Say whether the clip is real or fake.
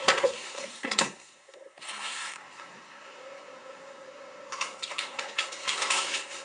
fake